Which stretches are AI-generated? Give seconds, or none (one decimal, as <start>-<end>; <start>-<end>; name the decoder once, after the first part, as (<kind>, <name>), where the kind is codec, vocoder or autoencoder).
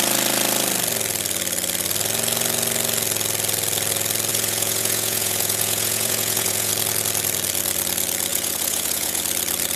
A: 4.3-6.7 (vocoder, Vocos); 8.3-9.2